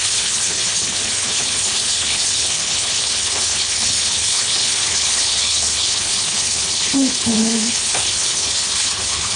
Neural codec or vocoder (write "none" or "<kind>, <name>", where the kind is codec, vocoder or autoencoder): codec, HILCodec